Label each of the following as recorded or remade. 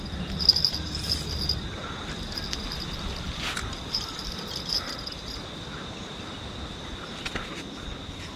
recorded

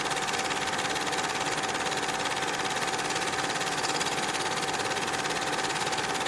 recorded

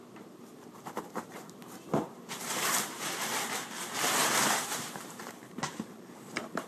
remade